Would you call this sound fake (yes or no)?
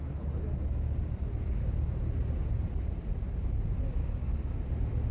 no